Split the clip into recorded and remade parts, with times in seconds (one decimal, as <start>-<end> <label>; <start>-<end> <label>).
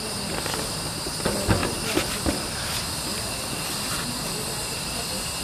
0.0-5.4 recorded